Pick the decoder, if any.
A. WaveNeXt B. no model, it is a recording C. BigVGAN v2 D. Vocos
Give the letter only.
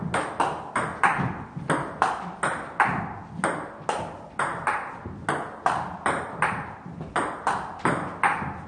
B